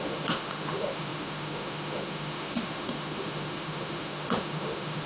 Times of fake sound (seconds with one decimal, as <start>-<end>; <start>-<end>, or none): 0.0-5.1